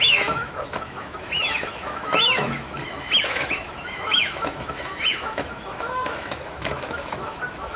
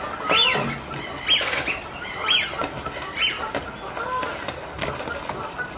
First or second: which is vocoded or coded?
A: first